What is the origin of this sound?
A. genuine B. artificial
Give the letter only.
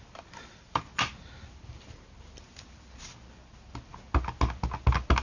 A